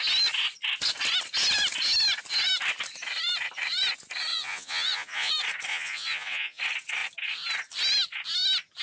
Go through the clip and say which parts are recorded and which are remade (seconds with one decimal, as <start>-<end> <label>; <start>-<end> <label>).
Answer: 0.0-4.3 recorded; 4.3-5.3 remade; 5.3-5.7 recorded; 5.7-6.6 remade; 6.6-8.8 recorded